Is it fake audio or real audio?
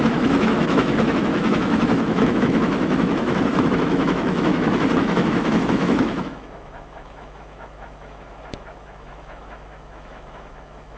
fake